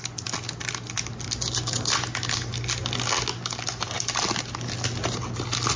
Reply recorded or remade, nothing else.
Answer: recorded